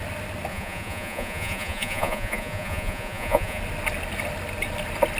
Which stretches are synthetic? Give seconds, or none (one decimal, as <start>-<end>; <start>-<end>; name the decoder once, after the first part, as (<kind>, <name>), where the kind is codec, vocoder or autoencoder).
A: 0.5-3.6 (vocoder, Vocos)